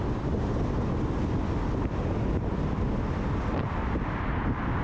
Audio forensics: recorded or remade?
recorded